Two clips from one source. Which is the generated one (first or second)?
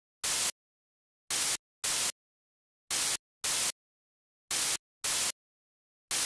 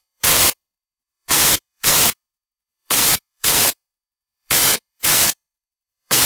second